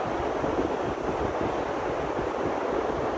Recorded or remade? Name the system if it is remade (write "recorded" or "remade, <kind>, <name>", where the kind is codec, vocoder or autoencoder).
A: recorded